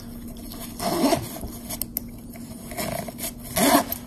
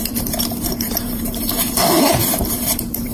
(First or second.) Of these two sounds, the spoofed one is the second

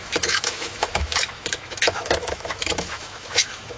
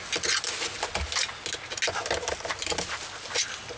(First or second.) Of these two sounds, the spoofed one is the first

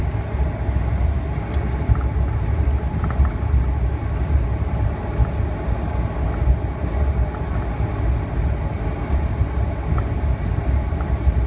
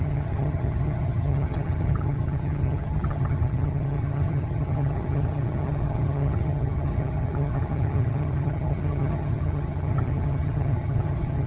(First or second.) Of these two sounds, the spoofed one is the second